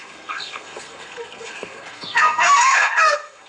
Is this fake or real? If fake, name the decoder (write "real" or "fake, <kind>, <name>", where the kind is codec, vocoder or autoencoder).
fake, codec, SNAC